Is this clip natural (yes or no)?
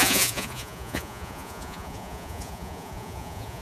no